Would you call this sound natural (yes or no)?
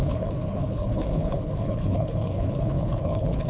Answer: no